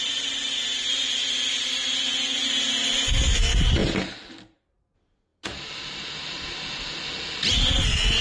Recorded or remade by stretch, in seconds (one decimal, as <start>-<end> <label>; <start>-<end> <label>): 0.0-8.2 recorded